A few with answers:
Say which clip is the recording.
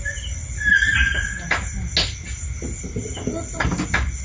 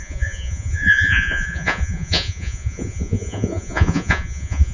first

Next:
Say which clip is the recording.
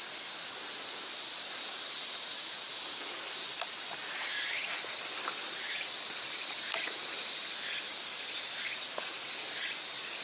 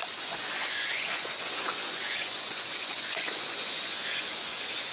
first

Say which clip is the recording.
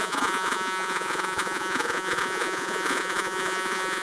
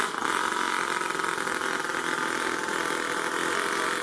second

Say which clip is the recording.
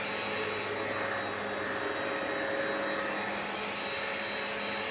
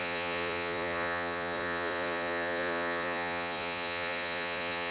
first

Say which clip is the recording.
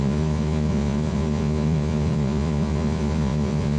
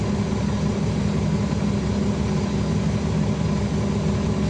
second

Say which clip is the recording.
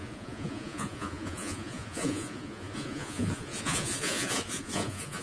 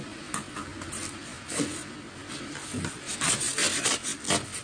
second